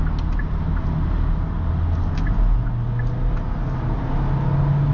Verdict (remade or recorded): recorded